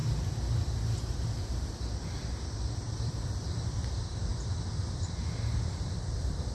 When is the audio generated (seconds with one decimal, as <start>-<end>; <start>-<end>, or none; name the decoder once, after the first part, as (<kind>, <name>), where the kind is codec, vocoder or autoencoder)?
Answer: 2.7-4.3 (vocoder, BigVGAN v2); 5.7-6.5